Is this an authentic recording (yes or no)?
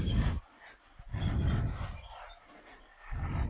yes